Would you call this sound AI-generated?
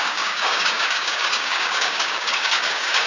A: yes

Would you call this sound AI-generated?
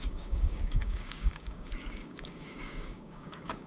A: yes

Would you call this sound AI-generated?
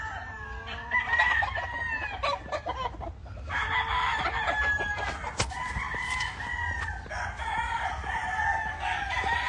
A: no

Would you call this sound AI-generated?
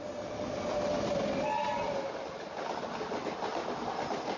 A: no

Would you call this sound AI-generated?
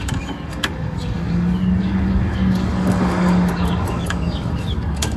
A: yes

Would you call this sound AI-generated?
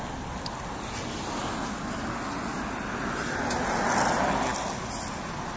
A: no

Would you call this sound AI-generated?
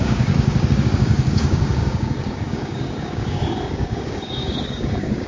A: yes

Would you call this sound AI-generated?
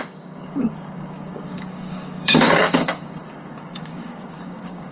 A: yes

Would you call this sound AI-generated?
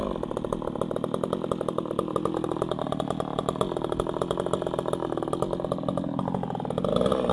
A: no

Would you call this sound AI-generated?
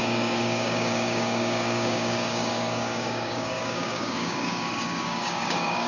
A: yes